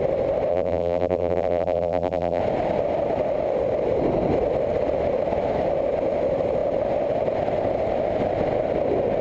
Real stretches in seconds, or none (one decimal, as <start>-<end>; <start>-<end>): 0.0-0.5; 2.4-9.2